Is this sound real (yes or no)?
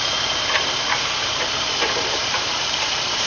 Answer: no